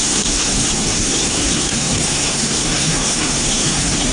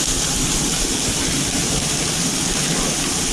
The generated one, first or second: first